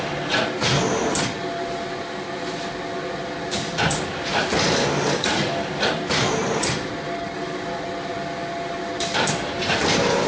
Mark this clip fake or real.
real